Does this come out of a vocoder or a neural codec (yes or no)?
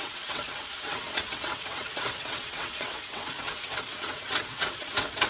yes